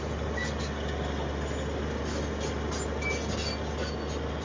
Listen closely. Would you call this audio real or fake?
real